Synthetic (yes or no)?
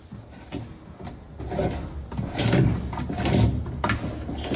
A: no